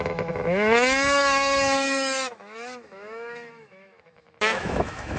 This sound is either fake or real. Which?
fake